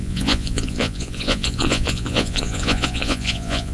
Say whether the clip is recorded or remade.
remade